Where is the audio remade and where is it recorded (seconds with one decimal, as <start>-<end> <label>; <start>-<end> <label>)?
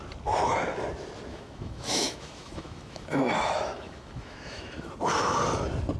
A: 0.0-1.3 recorded; 1.3-4.9 remade; 4.9-6.0 recorded